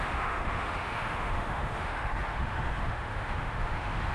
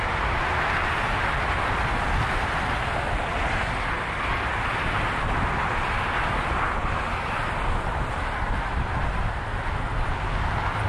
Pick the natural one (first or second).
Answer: second